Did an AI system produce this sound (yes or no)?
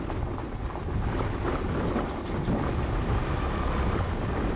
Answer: no